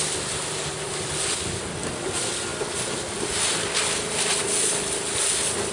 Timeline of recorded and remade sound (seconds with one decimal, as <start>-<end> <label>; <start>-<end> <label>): 0.0-5.7 recorded